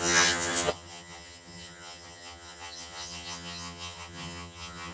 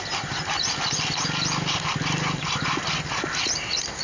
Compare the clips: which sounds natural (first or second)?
second